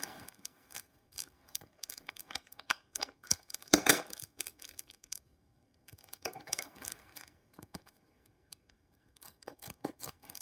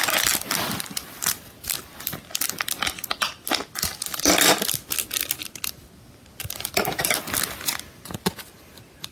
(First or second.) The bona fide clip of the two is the second